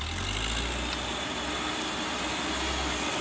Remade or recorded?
recorded